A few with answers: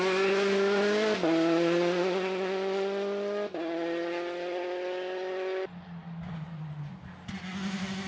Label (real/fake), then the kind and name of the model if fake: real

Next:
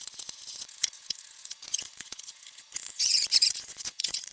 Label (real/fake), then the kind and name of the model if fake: fake, vocoder, Vocos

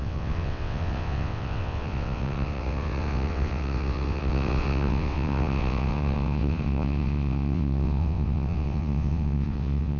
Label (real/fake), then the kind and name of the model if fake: fake, vocoder, WaveNeXt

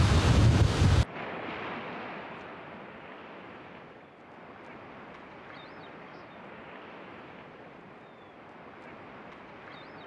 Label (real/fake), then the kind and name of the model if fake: real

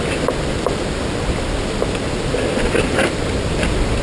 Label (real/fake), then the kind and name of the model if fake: real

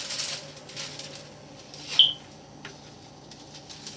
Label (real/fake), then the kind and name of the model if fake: real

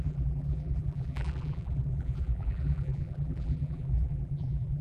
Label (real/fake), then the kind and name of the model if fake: fake, vocoder, BigVGAN v2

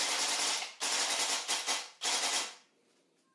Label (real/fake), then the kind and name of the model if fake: real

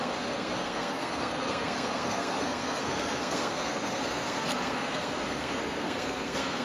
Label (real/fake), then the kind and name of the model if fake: fake, codec, SNAC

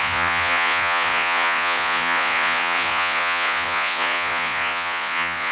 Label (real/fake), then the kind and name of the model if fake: fake, vocoder, Vocos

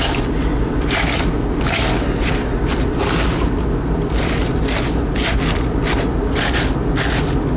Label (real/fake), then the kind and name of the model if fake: real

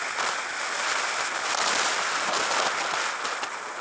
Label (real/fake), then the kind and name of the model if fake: real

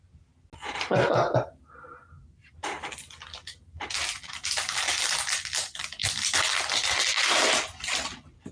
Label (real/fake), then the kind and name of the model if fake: real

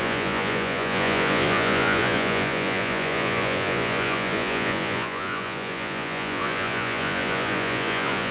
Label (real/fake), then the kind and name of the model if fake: fake, vocoder, Vocos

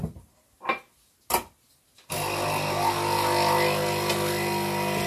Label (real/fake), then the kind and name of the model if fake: real